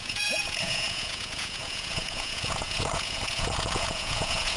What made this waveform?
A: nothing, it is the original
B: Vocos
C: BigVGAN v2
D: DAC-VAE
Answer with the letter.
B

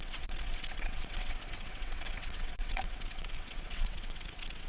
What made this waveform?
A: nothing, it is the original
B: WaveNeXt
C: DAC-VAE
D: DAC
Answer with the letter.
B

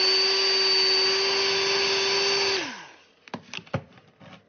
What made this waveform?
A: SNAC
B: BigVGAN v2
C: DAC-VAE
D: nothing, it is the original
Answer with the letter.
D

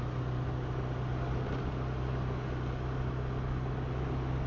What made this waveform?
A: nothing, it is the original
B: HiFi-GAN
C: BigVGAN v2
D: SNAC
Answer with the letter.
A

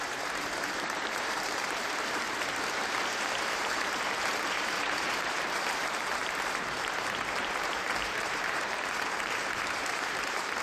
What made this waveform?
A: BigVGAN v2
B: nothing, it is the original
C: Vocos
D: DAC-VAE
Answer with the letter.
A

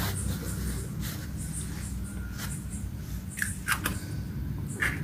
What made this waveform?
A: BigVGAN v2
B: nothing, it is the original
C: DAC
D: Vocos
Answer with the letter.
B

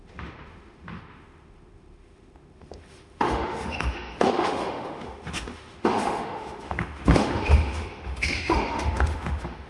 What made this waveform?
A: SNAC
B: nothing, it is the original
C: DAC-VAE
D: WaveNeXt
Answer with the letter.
C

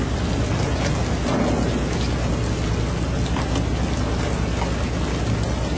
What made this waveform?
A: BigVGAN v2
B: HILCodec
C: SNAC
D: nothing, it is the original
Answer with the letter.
D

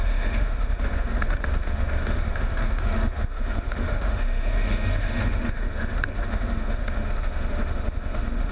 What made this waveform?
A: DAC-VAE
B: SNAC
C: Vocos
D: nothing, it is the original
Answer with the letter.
A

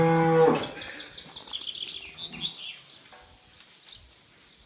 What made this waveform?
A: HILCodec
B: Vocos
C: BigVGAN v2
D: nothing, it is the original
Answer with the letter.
D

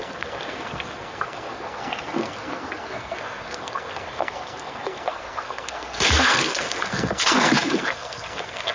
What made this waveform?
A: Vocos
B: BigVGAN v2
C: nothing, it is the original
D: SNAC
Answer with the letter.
D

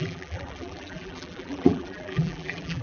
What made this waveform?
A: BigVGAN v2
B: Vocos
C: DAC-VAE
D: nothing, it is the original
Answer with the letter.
A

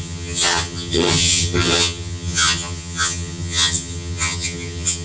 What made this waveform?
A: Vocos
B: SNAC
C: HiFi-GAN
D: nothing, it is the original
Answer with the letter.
C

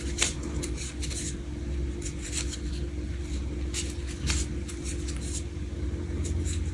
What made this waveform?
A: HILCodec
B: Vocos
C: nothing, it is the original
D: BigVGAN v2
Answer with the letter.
C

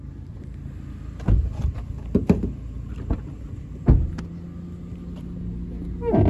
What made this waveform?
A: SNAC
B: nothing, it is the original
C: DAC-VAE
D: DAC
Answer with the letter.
B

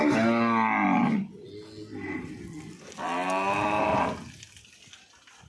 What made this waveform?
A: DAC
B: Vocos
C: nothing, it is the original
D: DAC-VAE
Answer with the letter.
C